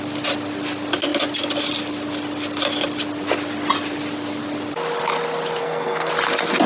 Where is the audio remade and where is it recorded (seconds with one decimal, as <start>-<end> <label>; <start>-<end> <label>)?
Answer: 0.0-5.6 recorded; 5.6-6.1 remade; 6.1-6.7 recorded